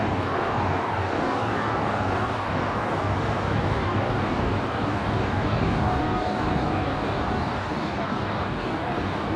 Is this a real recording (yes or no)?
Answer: no